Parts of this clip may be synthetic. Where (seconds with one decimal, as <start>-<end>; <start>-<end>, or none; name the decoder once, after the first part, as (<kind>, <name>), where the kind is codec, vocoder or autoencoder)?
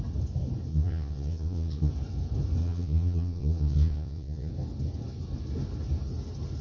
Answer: 0.7-1.9 (vocoder, Vocos); 2.6-4.5